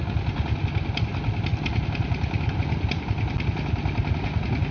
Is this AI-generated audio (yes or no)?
no